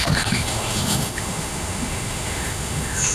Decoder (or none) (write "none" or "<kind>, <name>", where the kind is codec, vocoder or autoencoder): autoencoder, DAC-VAE